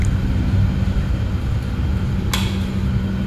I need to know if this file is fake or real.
real